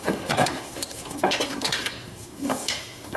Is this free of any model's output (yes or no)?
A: no